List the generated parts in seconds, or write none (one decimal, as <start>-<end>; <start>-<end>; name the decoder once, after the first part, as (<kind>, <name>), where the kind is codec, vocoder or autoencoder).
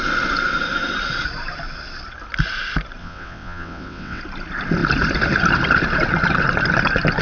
3.0-4.2 (vocoder, WaveNeXt)